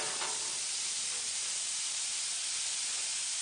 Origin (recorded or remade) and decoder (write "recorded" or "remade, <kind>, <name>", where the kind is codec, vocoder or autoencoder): recorded